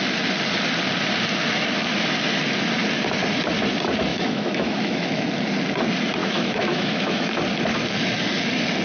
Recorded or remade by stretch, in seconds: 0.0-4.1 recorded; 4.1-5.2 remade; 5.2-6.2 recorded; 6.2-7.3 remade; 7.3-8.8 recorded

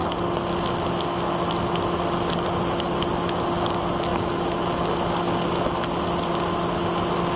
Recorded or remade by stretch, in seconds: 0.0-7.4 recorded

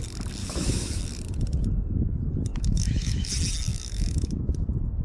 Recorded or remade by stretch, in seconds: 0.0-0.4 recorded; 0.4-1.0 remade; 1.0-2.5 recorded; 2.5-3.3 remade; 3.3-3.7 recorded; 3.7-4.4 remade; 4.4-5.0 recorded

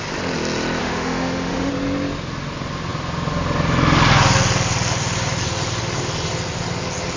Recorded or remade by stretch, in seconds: 0.0-0.8 recorded; 0.8-1.7 remade; 1.7-7.2 recorded